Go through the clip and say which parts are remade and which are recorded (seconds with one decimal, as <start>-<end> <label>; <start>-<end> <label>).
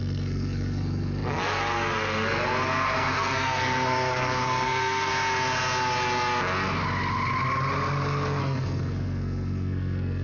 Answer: 0.0-5.1 remade; 5.1-8.4 recorded; 8.4-10.2 remade